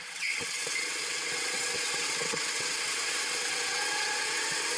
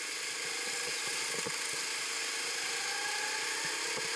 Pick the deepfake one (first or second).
first